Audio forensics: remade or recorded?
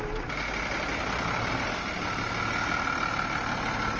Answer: recorded